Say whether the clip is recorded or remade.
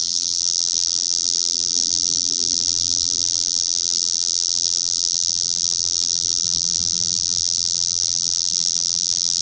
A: remade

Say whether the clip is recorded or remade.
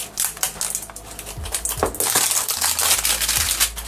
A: recorded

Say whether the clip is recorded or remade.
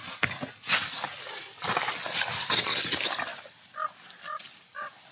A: recorded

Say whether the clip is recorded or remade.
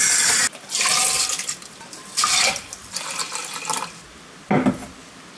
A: recorded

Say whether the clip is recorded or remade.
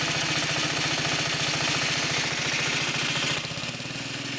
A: recorded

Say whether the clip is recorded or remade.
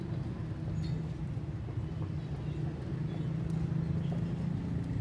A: recorded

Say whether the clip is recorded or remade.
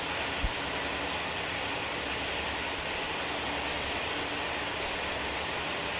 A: recorded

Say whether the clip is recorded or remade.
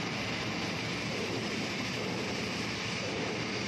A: remade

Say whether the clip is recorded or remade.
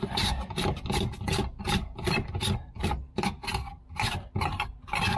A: recorded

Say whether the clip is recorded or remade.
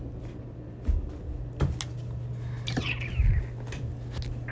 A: recorded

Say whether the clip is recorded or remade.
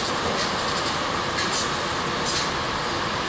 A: recorded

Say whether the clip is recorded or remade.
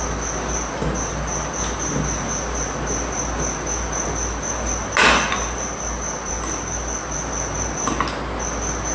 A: recorded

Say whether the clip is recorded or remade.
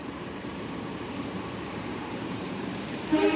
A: remade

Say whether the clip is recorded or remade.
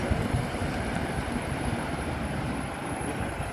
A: remade